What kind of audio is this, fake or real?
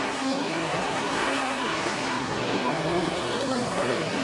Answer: fake